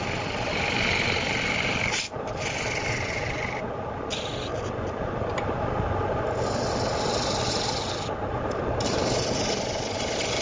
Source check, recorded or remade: recorded